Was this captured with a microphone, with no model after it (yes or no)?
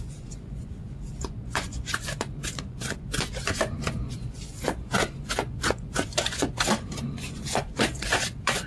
no